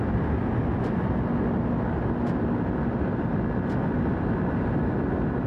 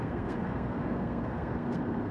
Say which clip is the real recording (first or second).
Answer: first